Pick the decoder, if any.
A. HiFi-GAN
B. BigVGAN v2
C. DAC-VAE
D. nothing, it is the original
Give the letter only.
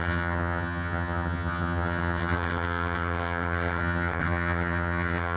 A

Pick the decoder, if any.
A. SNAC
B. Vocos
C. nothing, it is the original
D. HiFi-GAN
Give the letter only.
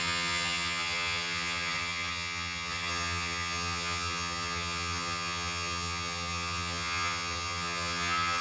D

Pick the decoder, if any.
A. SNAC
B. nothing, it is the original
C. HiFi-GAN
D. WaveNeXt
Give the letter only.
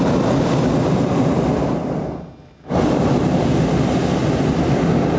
B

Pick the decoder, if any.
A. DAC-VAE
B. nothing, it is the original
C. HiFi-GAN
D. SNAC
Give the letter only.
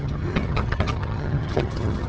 C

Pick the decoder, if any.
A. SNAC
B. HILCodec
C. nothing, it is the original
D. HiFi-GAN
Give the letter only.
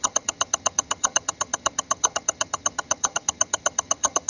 D